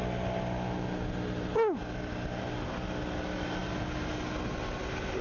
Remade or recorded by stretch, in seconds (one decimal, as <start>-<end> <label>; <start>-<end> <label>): 0.0-5.2 recorded